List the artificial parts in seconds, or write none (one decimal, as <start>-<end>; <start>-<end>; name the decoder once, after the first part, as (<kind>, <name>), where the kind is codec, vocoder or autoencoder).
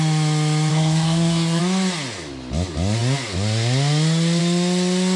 0.7-1.6 (codec, SNAC)